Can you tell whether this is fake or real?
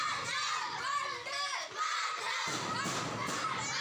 real